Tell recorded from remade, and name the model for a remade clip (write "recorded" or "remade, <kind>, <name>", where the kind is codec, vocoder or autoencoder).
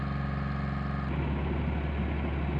recorded